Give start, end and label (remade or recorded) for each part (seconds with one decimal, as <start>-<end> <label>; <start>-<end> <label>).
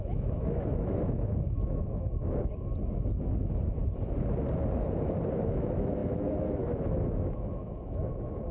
0.0-2.7 remade; 2.7-5.3 recorded; 5.3-8.5 remade